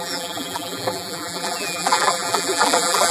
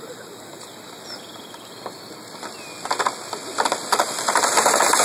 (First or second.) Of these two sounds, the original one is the second